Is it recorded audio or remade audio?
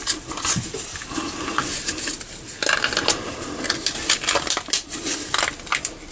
recorded